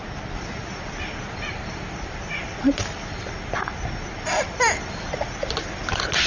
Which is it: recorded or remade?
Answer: recorded